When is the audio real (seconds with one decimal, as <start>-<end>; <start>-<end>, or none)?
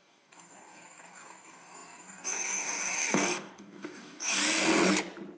4.4-5.4